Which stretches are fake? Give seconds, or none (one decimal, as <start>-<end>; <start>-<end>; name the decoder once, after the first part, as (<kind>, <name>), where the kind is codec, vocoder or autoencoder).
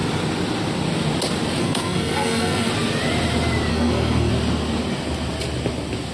1.6-2.7 (codec, SNAC); 3.7-4.3